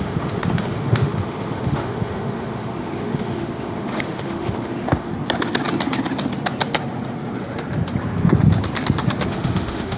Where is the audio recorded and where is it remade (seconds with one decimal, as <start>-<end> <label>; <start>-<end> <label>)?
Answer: 0.0-5.1 remade; 5.1-9.3 recorded; 9.3-10.0 remade